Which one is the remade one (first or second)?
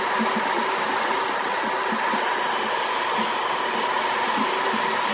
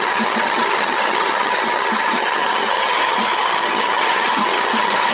second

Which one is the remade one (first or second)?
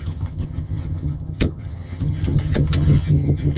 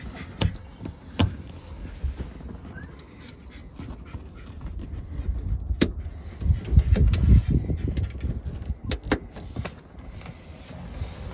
first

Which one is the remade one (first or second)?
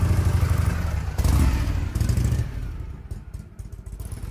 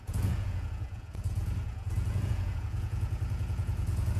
second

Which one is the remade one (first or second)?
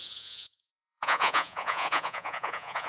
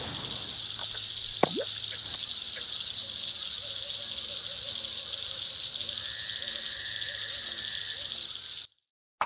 first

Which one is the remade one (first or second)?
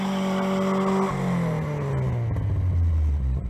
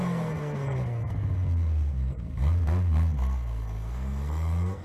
second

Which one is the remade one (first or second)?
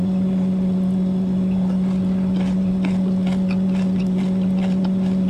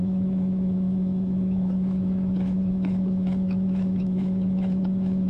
second